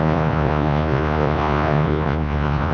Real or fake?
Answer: fake